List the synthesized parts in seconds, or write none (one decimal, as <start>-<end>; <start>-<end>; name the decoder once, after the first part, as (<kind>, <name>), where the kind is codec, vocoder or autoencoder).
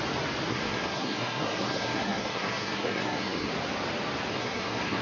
0.5-3.5 (codec, SNAC); 4.3-5.0